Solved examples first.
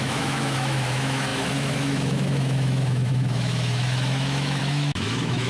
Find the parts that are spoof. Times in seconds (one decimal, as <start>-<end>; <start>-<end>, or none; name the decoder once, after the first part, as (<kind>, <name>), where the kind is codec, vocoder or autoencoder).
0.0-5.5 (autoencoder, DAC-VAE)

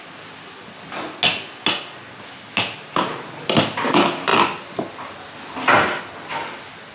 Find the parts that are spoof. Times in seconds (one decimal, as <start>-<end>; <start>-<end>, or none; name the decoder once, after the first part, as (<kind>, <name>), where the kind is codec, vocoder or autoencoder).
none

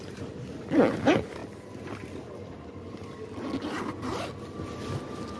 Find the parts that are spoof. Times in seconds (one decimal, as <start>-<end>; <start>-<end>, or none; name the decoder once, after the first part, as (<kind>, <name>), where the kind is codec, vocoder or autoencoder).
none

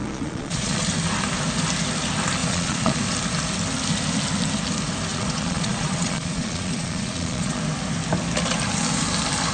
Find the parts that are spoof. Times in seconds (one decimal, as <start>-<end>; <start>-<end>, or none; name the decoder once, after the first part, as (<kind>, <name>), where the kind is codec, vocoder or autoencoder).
0.0-0.8 (vocoder, Vocos); 2.4-3.0; 5.1-7.6

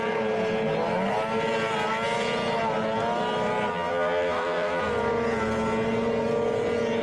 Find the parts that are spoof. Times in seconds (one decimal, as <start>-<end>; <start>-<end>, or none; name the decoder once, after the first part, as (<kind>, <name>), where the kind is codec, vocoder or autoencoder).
3.7-4.8 (vocoder, BigVGAN v2)

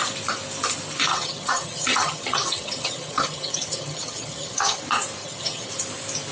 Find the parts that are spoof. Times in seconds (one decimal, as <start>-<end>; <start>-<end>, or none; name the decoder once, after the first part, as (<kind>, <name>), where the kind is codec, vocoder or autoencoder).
1.1-4.8 (vocoder, HiFi-GAN); 5.2-5.7